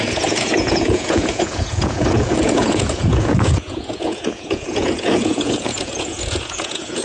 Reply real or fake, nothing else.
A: fake